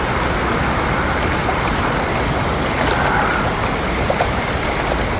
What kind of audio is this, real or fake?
real